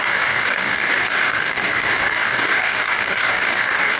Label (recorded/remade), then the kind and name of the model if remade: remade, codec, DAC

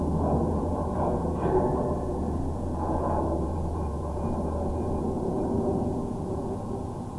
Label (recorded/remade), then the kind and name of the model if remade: remade, vocoder, Vocos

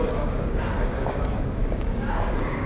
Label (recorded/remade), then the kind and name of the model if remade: remade, codec, DAC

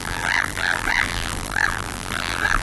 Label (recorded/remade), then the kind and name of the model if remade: remade, vocoder, BigVGAN v2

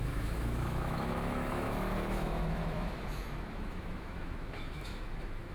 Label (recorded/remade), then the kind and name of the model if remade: remade, autoencoder, DAC-VAE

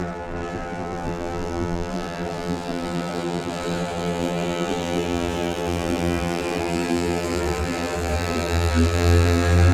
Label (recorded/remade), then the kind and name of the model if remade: remade, vocoder, BigVGAN v2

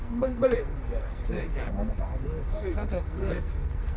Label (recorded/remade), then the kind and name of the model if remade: remade, codec, SNAC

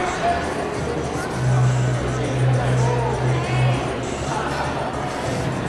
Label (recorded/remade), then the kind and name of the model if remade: recorded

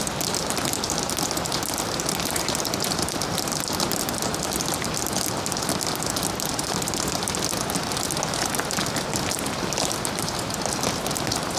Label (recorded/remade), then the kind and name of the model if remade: recorded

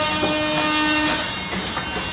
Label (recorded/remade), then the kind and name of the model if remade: recorded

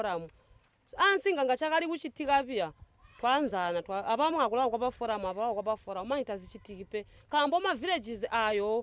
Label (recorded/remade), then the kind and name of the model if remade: recorded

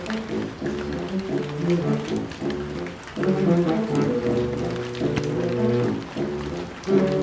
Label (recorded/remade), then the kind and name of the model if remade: recorded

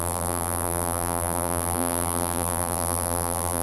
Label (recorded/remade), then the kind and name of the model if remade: remade, vocoder, BigVGAN v2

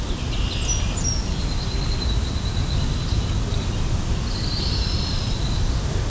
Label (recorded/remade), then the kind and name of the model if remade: recorded